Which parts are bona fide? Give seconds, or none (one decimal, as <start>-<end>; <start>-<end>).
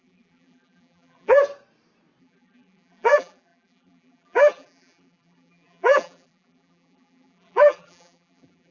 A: 1.4-2.2